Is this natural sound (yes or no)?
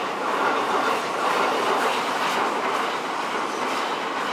yes